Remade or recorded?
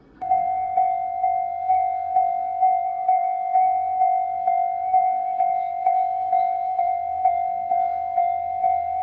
remade